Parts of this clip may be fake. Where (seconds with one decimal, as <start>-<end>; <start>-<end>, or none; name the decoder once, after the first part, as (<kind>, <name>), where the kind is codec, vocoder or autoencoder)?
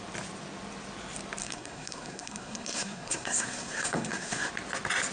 1.4-4.5 (codec, SNAC)